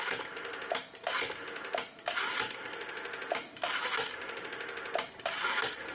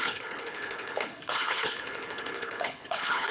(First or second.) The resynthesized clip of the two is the second